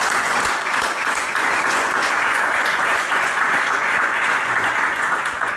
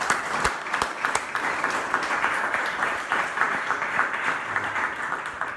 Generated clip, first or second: first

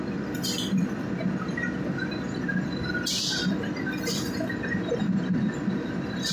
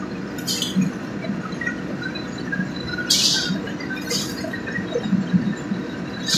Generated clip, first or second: second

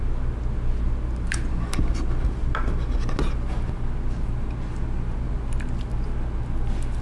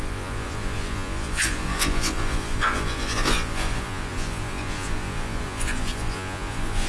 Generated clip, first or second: second